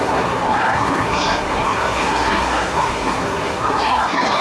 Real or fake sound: fake